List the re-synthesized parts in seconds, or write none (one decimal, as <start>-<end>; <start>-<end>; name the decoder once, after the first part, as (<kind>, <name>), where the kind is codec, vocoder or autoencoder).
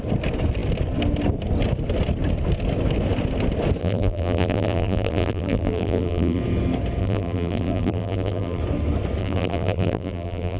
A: 3.8-6.4 (vocoder, BigVGAN v2); 7.0-8.6; 9.2-10.6